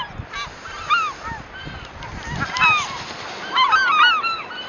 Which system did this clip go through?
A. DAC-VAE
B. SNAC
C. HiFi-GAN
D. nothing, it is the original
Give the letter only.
D